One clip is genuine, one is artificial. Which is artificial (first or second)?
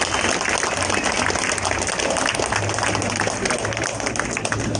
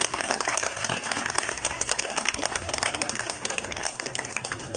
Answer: second